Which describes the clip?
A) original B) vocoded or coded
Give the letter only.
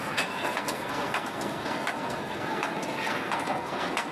B